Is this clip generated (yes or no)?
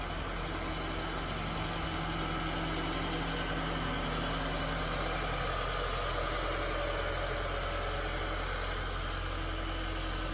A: no